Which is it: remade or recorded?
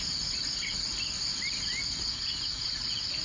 recorded